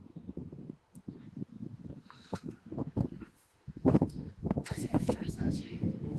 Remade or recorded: remade